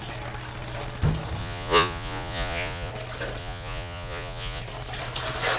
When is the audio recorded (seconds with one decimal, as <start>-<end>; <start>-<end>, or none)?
0.0-1.4; 2.9-3.4; 4.6-5.6